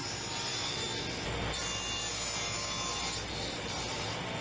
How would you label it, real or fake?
real